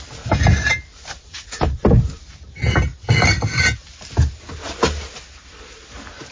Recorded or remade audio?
recorded